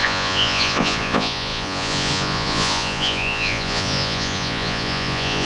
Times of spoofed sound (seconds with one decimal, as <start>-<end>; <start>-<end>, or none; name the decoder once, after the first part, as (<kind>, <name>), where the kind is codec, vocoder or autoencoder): 0.0-5.4 (vocoder, Vocos)